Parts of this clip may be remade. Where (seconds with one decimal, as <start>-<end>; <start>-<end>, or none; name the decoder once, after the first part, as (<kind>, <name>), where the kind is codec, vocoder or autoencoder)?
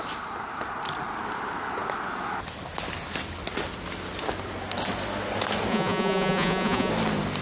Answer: 5.7-6.9 (vocoder, Vocos)